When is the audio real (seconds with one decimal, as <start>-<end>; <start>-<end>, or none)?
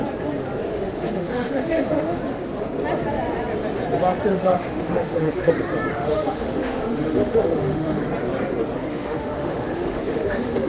0.0-0.7; 2.2-4.3; 5.5-5.9; 8.0-8.9